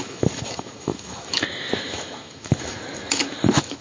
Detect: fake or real fake